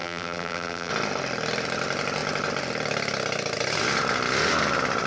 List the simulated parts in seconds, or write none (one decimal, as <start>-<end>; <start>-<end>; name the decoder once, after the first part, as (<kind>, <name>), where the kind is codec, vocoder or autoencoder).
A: 0.0-0.9 (vocoder, BigVGAN v2)